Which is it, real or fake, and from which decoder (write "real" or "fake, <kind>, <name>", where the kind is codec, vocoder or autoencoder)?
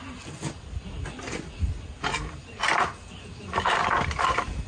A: real